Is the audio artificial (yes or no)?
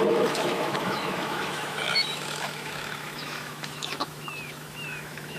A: yes